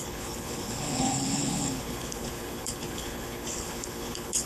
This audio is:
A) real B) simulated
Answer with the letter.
B